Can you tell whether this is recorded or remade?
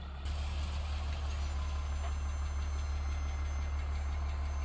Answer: recorded